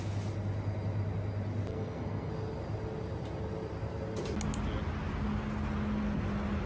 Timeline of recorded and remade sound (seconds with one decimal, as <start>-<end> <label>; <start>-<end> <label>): 0.0-1.7 recorded; 1.7-2.3 remade; 2.3-6.7 recorded